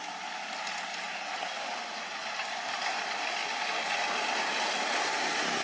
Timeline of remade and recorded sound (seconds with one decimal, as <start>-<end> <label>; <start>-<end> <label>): 0.0-5.6 recorded